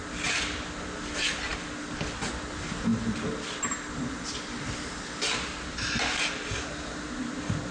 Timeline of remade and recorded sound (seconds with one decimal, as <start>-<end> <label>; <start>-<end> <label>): 0.0-7.7 recorded